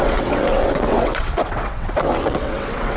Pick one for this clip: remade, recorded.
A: remade